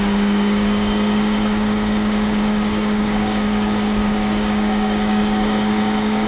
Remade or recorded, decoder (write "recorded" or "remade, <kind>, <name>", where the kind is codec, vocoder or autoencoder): remade, codec, DAC